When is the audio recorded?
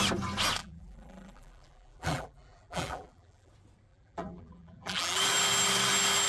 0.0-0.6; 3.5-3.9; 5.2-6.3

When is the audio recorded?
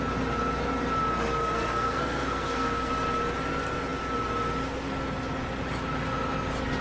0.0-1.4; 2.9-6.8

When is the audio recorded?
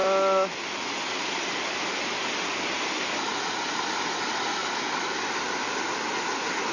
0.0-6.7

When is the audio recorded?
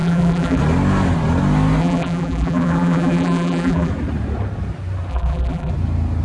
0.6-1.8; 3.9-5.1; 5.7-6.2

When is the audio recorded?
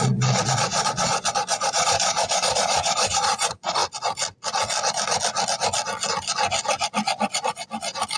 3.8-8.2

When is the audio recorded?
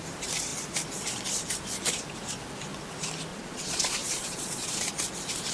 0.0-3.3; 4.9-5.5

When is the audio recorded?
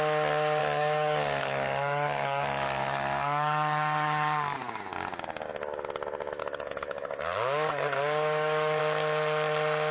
0.0-0.6; 4.8-6.4; 8.8-9.9